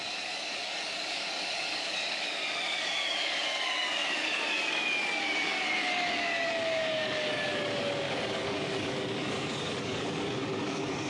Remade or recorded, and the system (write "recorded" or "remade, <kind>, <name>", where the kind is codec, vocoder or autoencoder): remade, codec, DAC